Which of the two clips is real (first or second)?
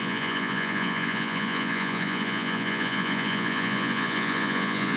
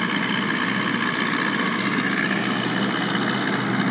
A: second